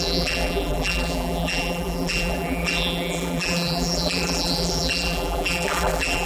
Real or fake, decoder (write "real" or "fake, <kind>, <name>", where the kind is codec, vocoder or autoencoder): fake, vocoder, BigVGAN v2